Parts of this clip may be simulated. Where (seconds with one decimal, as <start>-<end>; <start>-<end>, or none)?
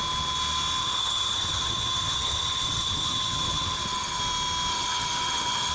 0.8-4.2; 4.7-5.7